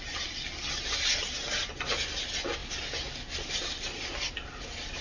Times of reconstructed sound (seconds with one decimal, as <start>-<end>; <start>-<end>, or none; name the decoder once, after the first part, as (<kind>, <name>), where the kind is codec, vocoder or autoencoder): none